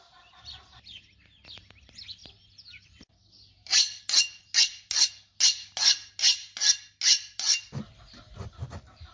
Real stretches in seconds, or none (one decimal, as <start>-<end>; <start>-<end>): 0.0-2.2; 4.0-9.1

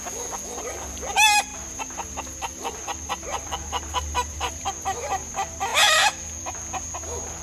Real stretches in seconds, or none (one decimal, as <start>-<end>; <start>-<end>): 0.0-1.5; 4.7-7.4